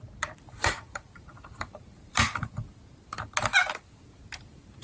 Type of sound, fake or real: fake